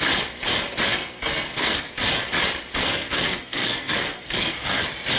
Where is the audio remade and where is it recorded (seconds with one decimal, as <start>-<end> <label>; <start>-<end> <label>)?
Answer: 0.0-0.9 recorded; 0.9-1.9 remade; 1.9-2.8 recorded; 2.8-4.8 remade; 4.8-5.2 recorded